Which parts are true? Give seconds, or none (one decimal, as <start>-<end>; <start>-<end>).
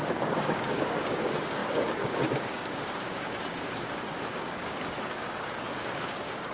none